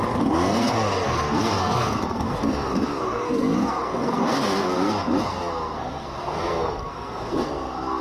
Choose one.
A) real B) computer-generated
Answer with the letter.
B